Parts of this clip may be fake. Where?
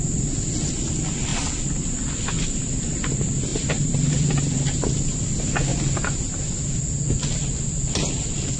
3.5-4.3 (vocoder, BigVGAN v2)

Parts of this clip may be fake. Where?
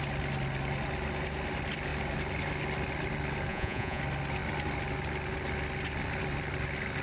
3.5-4.0 (vocoder, Vocos)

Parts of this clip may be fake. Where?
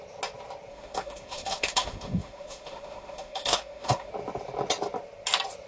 0.7-4.1 (autoencoder, DAC-VAE)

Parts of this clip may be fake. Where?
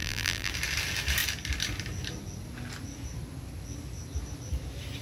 0.0-0.5 (vocoder, BigVGAN v2)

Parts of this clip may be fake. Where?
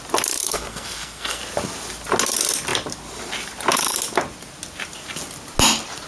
0.4-1.4 (codec, SNAC)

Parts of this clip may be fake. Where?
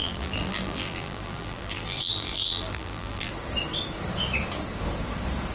0.0-3.3 (vocoder, BigVGAN v2)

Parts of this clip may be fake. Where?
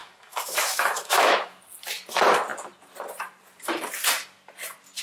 0.0-1.6 (autoencoder, DAC-VAE)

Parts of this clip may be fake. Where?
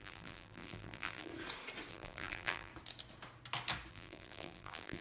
0.0-1.3 (vocoder, BigVGAN v2); 1.9-2.7; 3.9-5.0